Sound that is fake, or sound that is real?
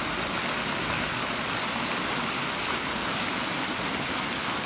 real